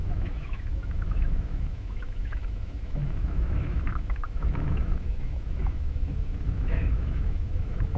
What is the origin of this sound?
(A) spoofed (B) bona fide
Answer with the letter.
A